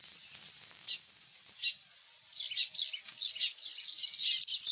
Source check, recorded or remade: recorded